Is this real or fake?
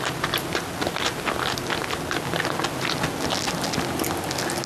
real